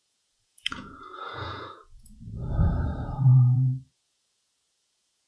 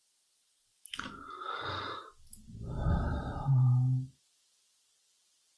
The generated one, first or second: first